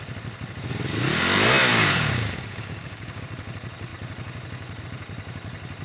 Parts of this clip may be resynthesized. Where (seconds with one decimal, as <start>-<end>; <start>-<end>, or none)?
1.7-3.2